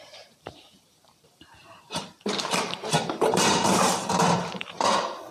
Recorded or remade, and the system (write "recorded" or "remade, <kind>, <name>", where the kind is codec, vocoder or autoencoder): remade, vocoder, BigVGAN v2